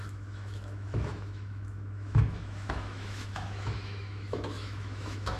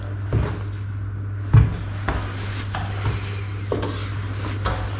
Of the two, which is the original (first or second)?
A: second